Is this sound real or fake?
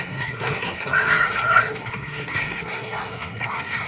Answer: fake